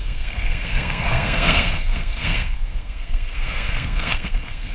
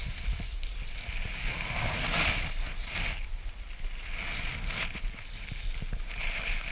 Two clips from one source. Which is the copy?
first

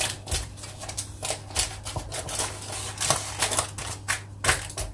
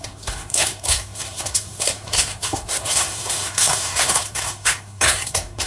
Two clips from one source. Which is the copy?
second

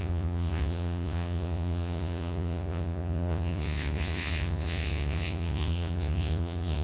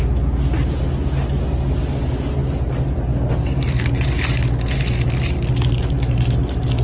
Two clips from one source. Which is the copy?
first